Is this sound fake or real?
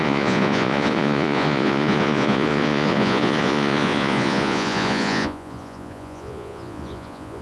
fake